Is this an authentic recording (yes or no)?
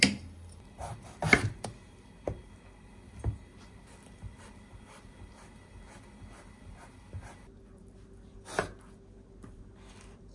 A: yes